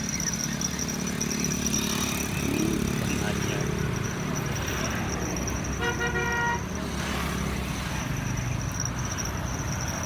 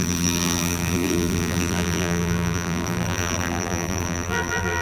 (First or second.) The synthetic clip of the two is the second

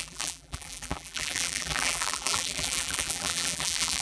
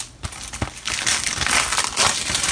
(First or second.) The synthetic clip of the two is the first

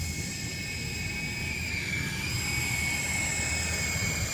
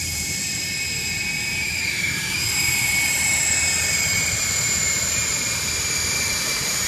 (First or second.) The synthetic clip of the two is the second